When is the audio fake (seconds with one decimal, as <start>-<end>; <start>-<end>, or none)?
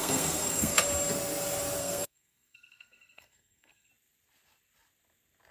0.0-0.8; 1.8-3.9